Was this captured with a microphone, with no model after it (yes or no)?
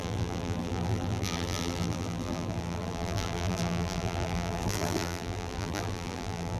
no